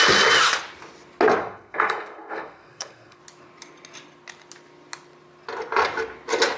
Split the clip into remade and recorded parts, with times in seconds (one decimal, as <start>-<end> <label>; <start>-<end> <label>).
0.0-1.4 recorded; 1.4-3.2 remade; 3.2-6.6 recorded